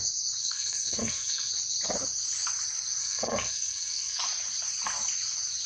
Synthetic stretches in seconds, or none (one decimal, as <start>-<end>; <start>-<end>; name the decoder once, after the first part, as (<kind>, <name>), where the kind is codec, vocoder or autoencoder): 0.4-1.5 (codec, SNAC); 3.0-4.2